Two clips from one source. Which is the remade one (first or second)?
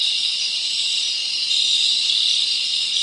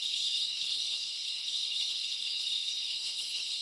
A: second